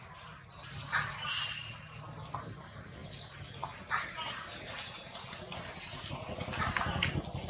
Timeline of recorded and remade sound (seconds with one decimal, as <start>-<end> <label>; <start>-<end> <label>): 0.0-7.5 recorded